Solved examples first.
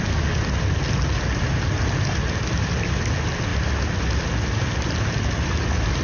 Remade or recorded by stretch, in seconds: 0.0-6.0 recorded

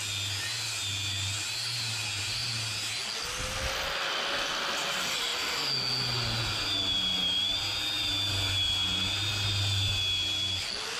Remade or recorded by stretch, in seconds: 0.0-11.0 recorded